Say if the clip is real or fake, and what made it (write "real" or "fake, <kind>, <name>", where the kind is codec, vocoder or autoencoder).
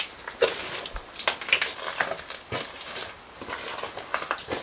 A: real